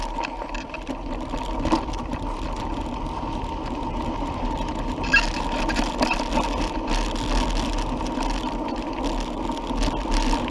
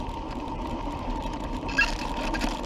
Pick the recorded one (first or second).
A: first